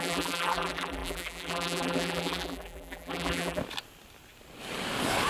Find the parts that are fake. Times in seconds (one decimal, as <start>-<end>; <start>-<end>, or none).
0.0-3.6